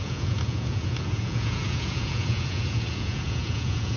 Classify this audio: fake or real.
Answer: fake